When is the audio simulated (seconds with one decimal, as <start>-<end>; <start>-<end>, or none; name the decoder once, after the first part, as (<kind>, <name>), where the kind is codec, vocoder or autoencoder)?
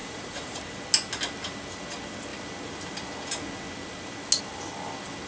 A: 0.0-0.6 (vocoder, Vocos)